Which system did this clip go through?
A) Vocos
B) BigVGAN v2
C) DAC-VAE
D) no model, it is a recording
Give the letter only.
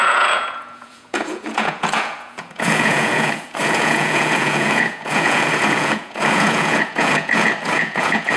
A